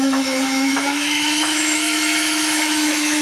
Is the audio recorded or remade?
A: remade